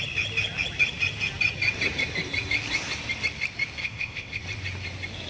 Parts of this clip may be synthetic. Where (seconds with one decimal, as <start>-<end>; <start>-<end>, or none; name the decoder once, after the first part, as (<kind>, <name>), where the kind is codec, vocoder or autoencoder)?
3.8-4.4 (codec, ZipCodec)